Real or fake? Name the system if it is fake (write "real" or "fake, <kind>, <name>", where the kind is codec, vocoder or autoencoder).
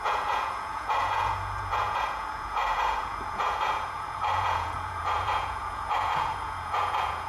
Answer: fake, vocoder, Vocos